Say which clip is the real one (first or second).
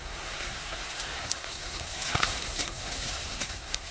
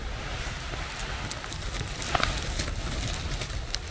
second